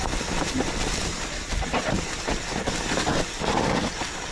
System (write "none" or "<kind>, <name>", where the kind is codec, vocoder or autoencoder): none